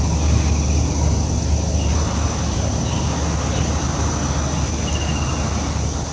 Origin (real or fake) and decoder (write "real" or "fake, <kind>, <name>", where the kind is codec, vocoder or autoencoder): real